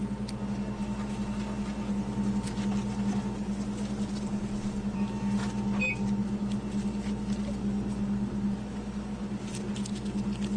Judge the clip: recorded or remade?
recorded